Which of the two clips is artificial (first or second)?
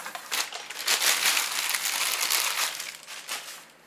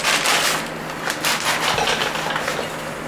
first